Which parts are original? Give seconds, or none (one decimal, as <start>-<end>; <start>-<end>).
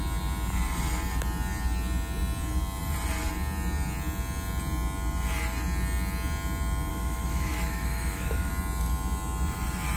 0.0-6.9; 8.5-10.0